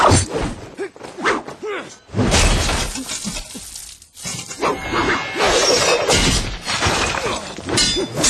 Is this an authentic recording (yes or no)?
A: yes